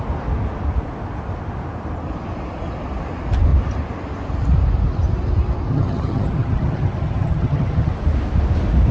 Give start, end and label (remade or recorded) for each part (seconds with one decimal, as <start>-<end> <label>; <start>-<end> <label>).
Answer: 0.0-5.7 recorded; 5.7-7.9 remade; 7.9-8.9 recorded